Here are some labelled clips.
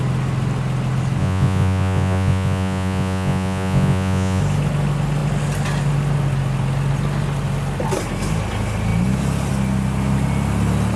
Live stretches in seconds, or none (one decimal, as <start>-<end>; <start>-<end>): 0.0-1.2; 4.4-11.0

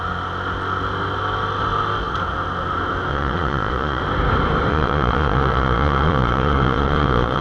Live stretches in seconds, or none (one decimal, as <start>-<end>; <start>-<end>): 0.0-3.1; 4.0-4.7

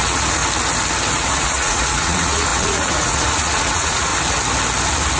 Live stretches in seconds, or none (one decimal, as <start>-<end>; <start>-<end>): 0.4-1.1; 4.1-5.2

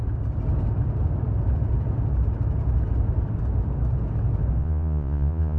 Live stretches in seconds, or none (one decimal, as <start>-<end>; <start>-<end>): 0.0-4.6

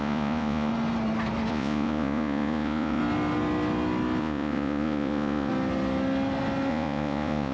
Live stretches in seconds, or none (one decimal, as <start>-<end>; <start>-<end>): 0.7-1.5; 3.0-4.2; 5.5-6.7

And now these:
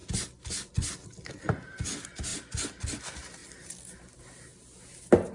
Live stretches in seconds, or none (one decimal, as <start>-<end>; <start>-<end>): 0.0-5.3

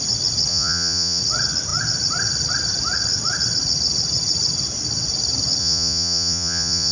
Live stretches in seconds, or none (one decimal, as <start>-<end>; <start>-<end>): 0.0-0.5; 1.2-5.6

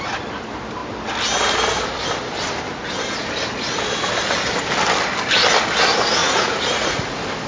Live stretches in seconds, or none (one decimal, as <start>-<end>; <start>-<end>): 0.0-6.2; 7.0-7.5